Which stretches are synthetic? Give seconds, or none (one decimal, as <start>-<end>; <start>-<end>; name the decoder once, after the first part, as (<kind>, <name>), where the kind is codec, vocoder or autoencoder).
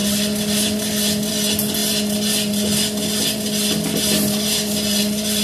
none